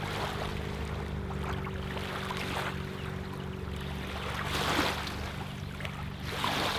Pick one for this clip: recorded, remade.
recorded